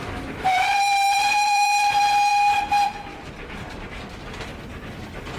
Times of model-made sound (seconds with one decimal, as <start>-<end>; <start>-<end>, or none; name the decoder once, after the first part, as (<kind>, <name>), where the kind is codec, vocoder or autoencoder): 0.0-1.9 (vocoder, BigVGAN v2); 4.5-5.0